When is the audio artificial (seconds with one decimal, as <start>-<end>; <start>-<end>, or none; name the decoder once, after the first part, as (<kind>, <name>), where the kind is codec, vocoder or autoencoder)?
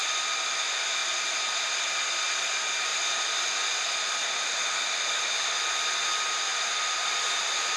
none